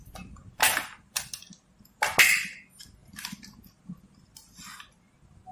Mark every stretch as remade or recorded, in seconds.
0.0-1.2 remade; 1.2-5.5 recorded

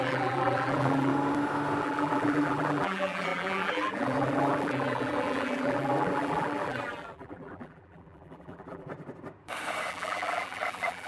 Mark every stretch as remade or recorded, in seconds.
0.0-1.1 remade; 1.1-1.8 recorded; 1.8-8.9 remade; 8.9-9.9 recorded; 9.9-11.1 remade

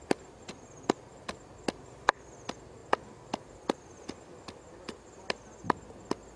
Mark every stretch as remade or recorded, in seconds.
0.0-1.1 recorded; 1.1-1.9 remade; 1.9-6.4 recorded

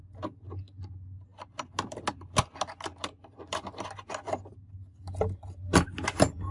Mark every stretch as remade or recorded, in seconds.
0.0-6.5 recorded